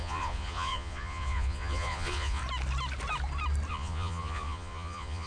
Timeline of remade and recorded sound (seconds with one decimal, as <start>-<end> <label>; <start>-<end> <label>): 0.0-2.4 remade; 2.4-3.7 recorded; 3.7-5.3 remade